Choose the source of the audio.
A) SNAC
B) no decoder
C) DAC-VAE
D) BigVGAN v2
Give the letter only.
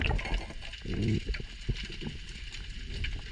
B